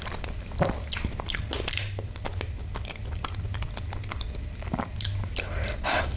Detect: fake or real real